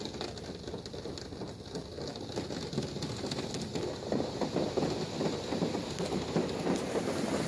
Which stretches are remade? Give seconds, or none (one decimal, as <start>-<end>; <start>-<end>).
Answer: none